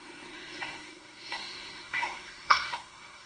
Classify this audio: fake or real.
fake